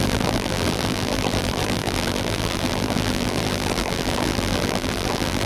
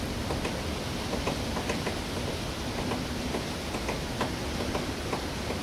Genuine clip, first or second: second